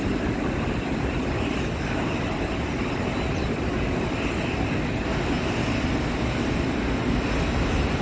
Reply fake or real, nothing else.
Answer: real